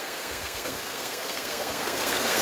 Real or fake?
fake